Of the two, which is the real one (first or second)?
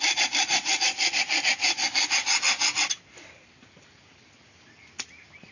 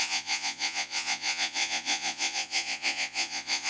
first